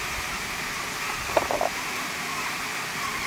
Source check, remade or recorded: remade